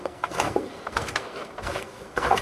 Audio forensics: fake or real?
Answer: fake